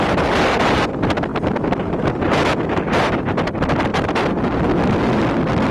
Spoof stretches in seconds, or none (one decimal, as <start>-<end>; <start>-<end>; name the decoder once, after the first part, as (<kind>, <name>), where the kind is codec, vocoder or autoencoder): none